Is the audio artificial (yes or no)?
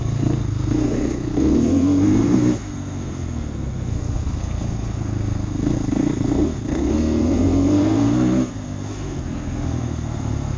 yes